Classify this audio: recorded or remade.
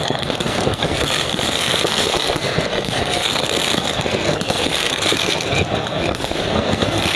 remade